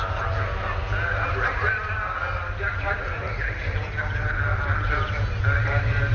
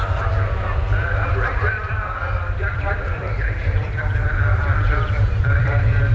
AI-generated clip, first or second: second